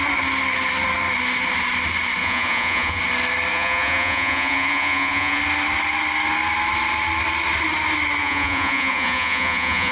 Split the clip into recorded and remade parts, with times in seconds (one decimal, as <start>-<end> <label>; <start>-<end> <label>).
0.0-2.2 recorded; 2.2-3.0 remade; 3.0-3.5 recorded; 3.5-5.4 remade; 5.4-8.2 recorded; 8.2-9.9 remade